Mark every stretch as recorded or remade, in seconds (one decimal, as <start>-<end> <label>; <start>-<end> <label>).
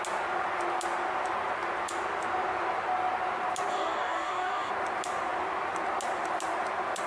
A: 0.0-3.7 recorded; 3.7-4.7 remade; 4.7-7.1 recorded